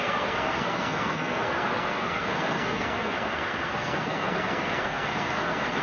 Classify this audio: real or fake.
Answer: fake